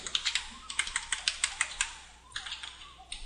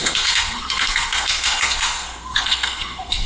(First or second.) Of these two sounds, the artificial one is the second